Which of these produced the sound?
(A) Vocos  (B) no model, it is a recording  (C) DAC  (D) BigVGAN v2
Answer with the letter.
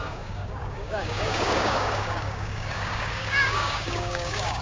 C